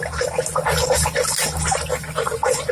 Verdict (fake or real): real